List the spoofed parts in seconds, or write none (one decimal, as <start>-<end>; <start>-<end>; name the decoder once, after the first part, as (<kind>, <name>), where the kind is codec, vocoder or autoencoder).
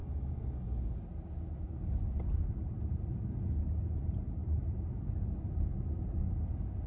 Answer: 0.0-1.0 (codec, DAC)